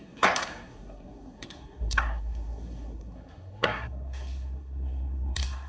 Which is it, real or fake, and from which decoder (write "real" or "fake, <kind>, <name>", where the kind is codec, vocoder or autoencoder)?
fake, codec, SNAC